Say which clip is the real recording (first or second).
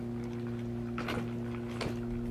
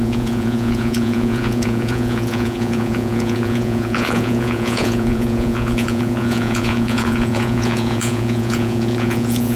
first